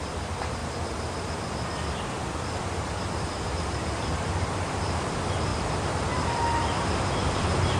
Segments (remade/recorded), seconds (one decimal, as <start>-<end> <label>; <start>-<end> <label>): 0.0-0.6 remade; 0.6-3.0 recorded; 3.0-7.8 remade